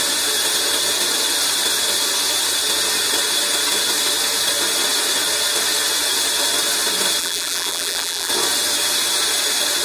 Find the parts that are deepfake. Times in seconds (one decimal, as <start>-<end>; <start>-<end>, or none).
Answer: 7.2-8.3